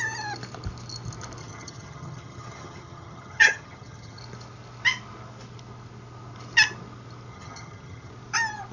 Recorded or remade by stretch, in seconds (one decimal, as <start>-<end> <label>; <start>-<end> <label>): 0.0-1.4 recorded; 1.4-4.2 remade; 4.2-7.3 recorded; 7.3-8.1 remade; 8.1-8.7 recorded